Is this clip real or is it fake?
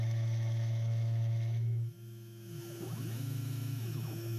fake